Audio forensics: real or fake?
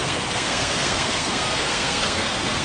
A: fake